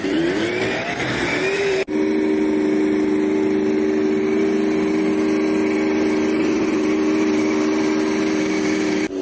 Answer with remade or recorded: recorded